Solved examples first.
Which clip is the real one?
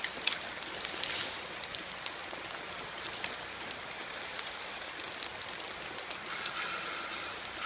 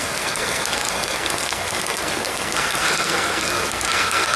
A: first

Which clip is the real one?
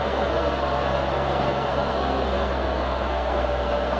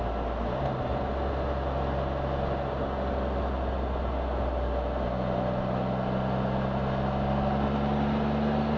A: second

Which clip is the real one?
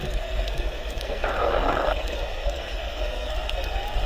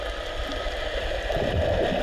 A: second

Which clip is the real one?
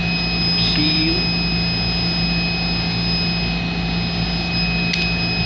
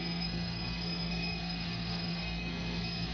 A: first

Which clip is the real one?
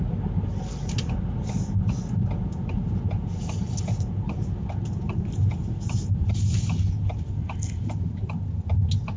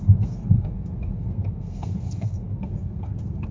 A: first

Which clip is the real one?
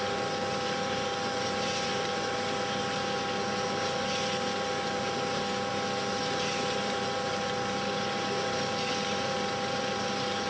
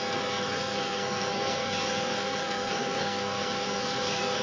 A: first